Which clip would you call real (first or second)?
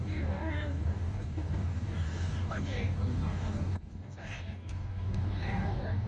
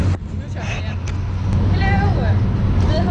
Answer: second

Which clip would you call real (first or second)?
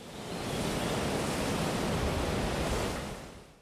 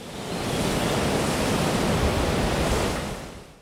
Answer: first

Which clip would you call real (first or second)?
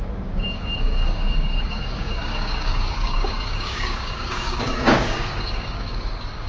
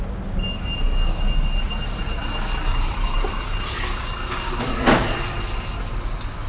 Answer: second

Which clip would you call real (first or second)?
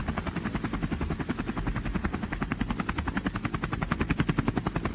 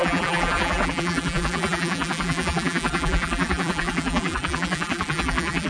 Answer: first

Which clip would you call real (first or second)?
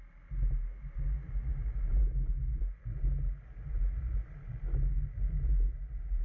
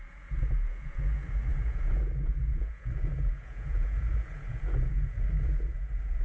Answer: first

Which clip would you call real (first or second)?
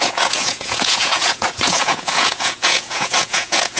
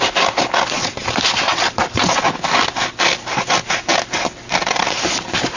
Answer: second